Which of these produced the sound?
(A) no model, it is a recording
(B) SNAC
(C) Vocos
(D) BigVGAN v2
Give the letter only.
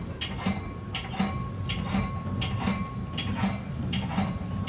A